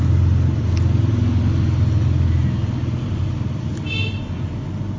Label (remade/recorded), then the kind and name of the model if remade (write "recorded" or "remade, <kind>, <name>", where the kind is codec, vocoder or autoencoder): recorded